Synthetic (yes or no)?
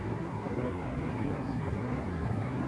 yes